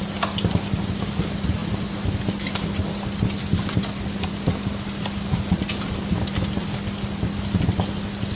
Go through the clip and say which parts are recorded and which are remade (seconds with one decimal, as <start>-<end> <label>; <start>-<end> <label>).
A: 0.0-8.4 recorded